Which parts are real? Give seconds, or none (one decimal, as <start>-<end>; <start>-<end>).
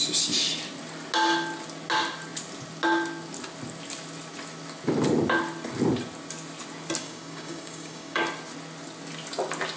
0.0-7.0; 8.2-9.8